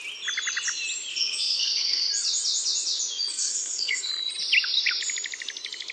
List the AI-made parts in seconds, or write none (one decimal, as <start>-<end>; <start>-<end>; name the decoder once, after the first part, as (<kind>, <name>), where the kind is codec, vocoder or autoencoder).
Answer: 1.1-2.1 (codec, SNAC); 3.3-4.1